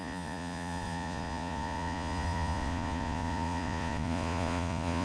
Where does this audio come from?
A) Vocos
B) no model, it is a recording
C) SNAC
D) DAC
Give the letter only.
A